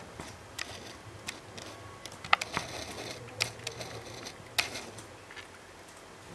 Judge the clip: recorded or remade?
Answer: recorded